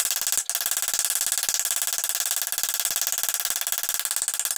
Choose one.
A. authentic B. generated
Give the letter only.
A